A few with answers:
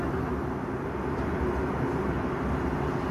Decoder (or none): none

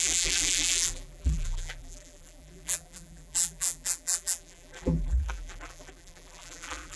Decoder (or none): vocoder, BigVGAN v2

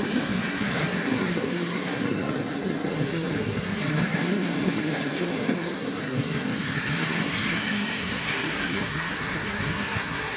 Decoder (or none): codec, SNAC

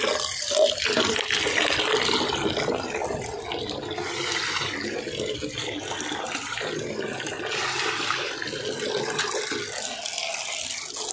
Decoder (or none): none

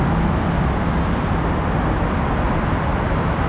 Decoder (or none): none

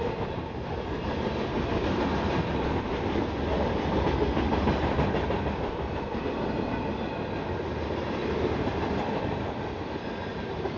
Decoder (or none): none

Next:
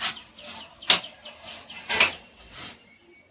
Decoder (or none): none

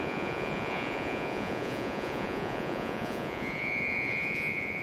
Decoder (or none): vocoder, Vocos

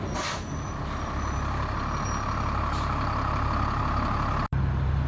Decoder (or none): none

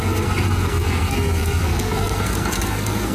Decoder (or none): codec, SNAC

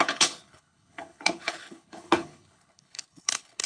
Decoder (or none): codec, HILCodec